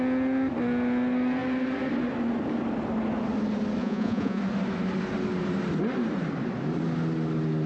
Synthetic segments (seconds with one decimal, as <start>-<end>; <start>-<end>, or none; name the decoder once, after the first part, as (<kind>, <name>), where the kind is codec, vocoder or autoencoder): 3.8-4.4 (vocoder, Vocos)